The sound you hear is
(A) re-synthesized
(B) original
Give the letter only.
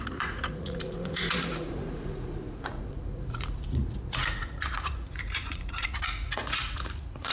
A